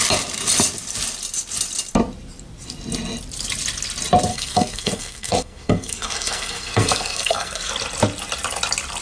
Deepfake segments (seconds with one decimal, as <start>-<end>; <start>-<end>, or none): 4.3-7.7